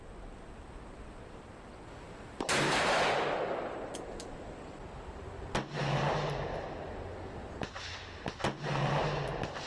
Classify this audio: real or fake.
real